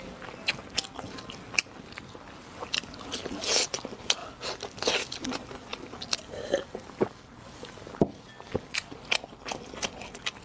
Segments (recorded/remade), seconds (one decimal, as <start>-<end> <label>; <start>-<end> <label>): 0.0-10.4 recorded